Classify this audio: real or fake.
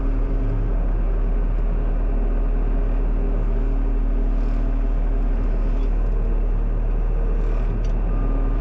real